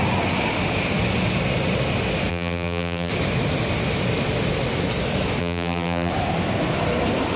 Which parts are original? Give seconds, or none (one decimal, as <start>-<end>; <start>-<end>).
0.0-2.3; 3.1-5.4; 6.1-7.4